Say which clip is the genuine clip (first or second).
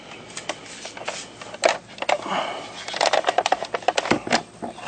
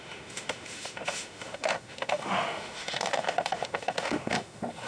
first